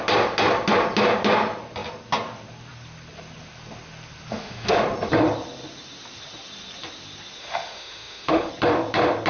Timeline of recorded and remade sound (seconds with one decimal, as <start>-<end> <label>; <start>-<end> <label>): 0.0-4.3 recorded; 4.3-4.8 remade; 4.8-7.4 recorded; 7.4-8.5 remade; 8.5-9.3 recorded